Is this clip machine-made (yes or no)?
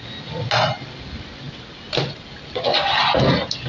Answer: no